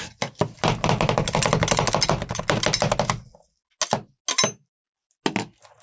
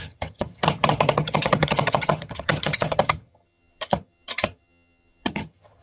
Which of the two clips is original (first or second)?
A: first